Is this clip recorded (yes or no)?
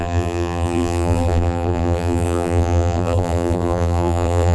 no